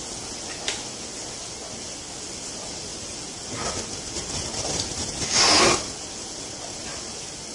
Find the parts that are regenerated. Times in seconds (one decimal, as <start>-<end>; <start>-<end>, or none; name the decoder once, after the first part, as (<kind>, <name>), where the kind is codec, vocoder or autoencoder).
none